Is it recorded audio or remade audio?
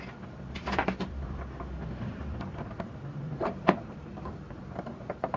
remade